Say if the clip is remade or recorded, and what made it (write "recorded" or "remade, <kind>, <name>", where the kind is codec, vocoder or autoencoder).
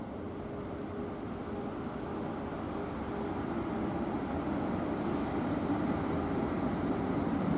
recorded